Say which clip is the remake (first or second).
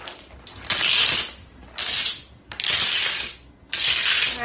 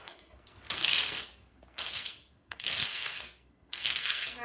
second